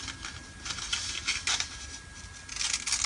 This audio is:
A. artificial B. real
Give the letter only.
B